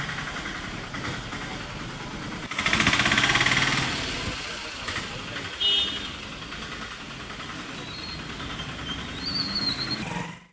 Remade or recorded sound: recorded